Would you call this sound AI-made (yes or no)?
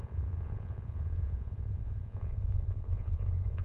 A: yes